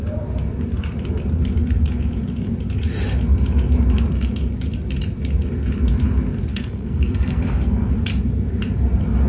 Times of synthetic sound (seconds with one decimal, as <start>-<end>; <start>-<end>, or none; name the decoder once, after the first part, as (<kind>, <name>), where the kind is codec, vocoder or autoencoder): 6.5-7.9 (codec, SNAC)